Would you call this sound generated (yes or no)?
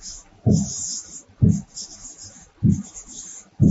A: no